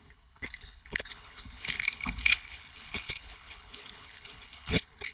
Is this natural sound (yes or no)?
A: no